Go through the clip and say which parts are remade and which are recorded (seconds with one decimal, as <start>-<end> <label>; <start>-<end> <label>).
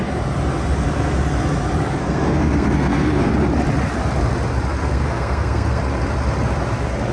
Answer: 0.0-2.0 recorded; 2.0-3.3 remade; 3.3-4.8 recorded; 4.8-5.8 remade; 5.8-7.1 recorded